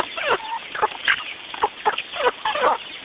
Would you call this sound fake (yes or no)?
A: yes